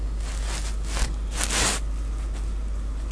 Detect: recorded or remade recorded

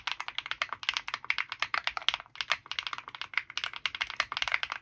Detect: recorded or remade recorded